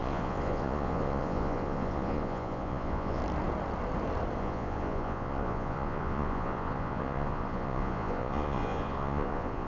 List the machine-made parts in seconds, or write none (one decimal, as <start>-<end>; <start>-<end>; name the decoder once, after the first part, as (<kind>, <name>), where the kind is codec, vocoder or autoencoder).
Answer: 0.0-3.2 (vocoder, Vocos); 4.4-9.7